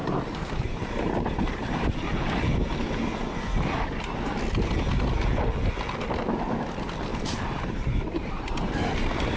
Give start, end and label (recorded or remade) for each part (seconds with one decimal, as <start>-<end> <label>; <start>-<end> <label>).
0.0-1.7 remade; 1.7-7.1 recorded; 7.1-9.4 remade